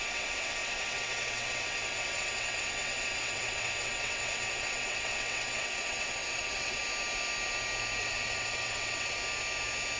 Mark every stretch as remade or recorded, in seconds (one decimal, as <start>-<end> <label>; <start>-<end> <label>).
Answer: 0.0-6.8 remade; 6.8-8.0 recorded; 8.0-9.2 remade; 9.2-10.0 recorded